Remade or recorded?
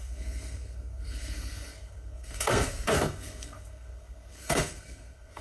remade